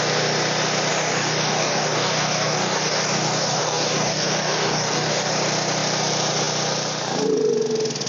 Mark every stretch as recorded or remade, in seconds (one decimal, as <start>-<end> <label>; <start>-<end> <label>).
0.0-0.9 recorded; 0.9-5.3 remade; 5.3-8.1 recorded